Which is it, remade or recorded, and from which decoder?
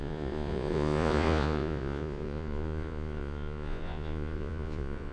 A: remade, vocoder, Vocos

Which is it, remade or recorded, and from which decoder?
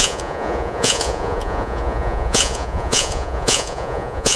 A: remade, vocoder, Vocos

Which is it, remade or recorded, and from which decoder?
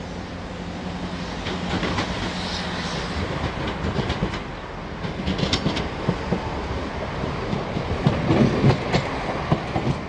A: recorded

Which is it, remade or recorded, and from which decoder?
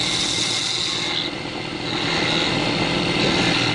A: recorded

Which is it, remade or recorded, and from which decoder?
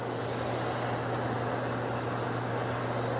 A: recorded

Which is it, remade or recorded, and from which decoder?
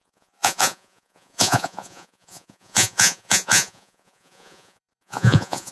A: remade, vocoder, Vocos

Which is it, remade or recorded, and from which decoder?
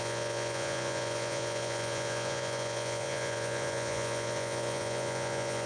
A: remade, vocoder, Vocos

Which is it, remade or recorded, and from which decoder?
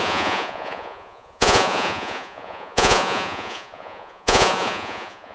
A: remade, vocoder, Vocos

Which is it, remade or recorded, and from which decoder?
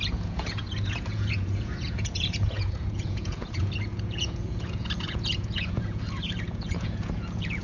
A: remade, vocoder, Vocos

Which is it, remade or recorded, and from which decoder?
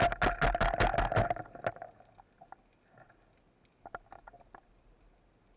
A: recorded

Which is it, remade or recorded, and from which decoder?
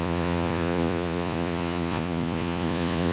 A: remade, vocoder, Vocos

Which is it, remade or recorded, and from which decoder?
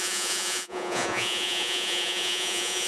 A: remade, vocoder, Vocos